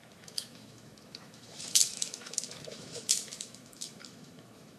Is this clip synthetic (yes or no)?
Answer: yes